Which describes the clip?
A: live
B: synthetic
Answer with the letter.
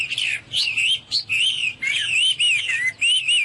A